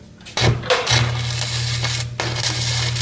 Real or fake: real